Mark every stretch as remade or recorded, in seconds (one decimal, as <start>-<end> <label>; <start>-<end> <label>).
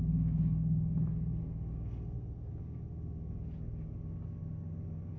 0.0-1.4 recorded; 1.4-2.5 remade; 2.5-5.2 recorded